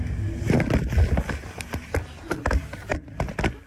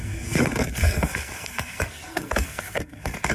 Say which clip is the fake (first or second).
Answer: second